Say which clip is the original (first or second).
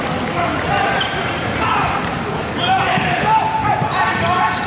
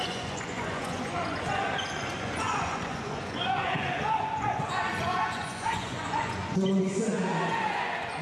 first